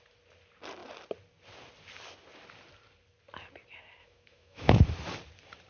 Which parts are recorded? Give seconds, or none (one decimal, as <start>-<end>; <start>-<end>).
0.0-4.0; 4.8-5.7